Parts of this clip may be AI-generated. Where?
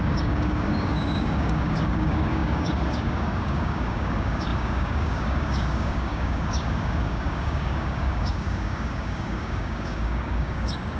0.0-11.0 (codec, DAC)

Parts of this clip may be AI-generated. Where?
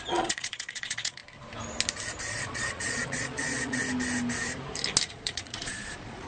0.0-1.2 (vocoder, Vocos); 2.4-3.8; 5.1-6.3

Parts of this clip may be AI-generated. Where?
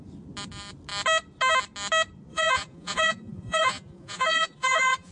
2.3-5.1 (vocoder, Vocos)